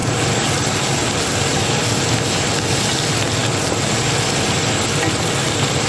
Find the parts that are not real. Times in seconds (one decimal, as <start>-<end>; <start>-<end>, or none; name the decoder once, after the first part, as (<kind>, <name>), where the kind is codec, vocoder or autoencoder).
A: none